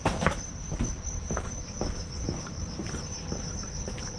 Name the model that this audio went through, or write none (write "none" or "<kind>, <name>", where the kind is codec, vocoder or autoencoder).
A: none